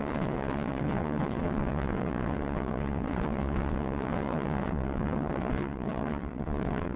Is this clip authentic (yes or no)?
no